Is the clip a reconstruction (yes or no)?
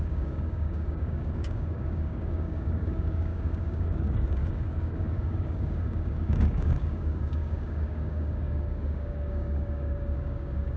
yes